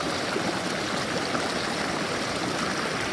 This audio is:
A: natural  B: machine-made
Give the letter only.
A